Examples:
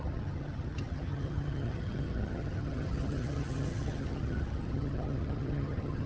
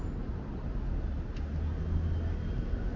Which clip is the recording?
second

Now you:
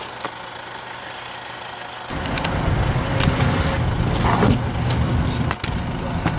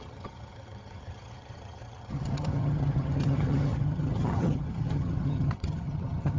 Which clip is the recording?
first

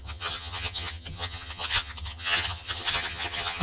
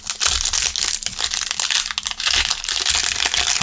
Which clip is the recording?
second